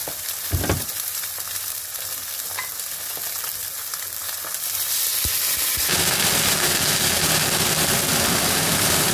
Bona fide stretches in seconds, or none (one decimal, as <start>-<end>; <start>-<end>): 2.5-8.1